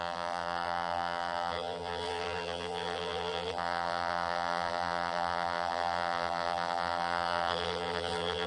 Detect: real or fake fake